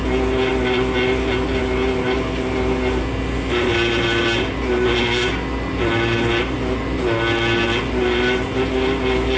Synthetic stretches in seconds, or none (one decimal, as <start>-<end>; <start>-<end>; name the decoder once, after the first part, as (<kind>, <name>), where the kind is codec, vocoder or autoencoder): none